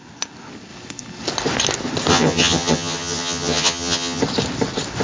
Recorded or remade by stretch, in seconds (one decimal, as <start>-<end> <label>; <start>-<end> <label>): 0.0-2.1 recorded; 2.1-4.2 remade; 4.2-5.0 recorded